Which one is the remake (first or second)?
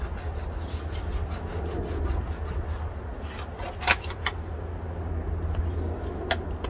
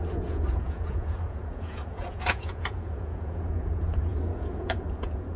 second